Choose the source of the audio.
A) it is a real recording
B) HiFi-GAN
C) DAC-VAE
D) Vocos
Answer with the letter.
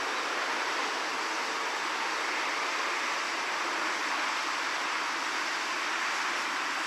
A